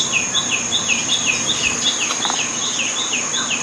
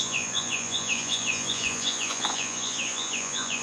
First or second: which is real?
first